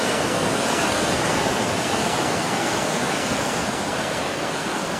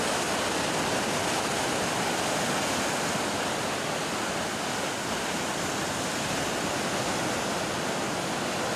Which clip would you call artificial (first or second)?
first